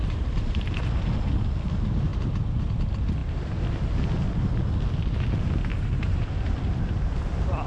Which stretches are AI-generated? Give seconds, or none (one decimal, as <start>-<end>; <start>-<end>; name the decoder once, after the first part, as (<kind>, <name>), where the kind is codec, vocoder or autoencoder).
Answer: 0.0-0.8 (vocoder, BigVGAN v2); 2.1-2.6; 5.7-6.2